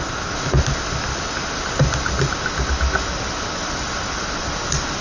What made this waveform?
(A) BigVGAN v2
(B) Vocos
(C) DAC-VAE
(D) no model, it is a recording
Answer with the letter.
D